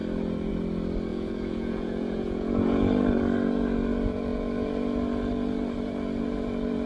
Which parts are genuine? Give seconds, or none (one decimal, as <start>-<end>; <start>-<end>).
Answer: 0.0-1.1; 2.8-6.9